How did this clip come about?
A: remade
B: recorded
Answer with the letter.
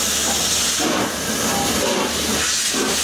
B